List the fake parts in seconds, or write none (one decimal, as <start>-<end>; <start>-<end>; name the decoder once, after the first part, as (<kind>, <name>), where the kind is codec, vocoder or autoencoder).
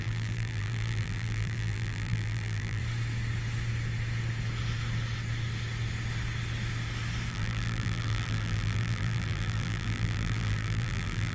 0.0-2.8 (vocoder, BigVGAN v2); 7.3-11.3